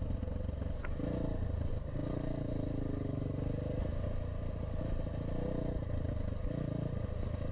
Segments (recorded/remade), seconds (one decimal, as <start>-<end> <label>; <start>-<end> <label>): 0.0-7.5 recorded